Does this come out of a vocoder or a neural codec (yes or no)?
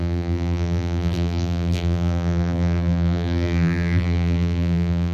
yes